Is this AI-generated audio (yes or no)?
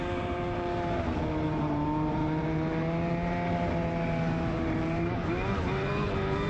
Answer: yes